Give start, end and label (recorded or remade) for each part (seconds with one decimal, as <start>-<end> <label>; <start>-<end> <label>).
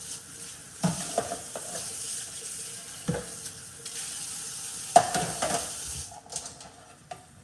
0.0-0.6 recorded; 0.6-2.8 remade; 2.8-7.4 recorded